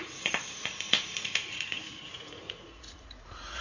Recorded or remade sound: remade